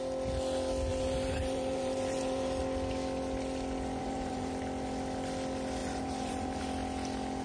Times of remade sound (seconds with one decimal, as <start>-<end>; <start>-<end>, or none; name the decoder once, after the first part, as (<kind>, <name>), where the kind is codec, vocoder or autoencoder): 0.9-2.6 (vocoder, BigVGAN v2); 4.0-4.5; 5.8-6.6